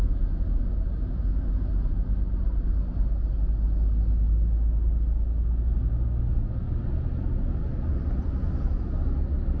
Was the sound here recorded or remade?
recorded